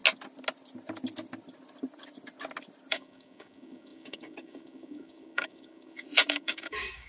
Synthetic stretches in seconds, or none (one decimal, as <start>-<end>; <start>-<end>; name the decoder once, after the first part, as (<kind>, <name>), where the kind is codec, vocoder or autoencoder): 2.9-7.1 (codec, DAC)